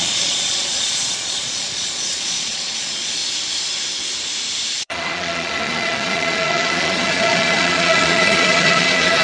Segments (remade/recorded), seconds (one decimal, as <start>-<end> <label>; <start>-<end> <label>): 0.0-3.2 remade; 3.2-4.8 recorded; 4.8-9.2 remade